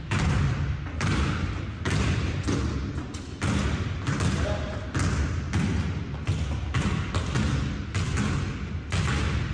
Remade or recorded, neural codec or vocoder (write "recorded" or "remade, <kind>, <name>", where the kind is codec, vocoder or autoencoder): recorded